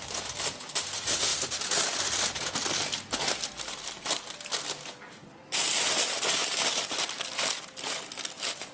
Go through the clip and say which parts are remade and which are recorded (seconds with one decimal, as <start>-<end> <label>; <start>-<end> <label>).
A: 0.0-8.7 recorded